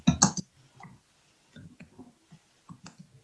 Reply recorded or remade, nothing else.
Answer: recorded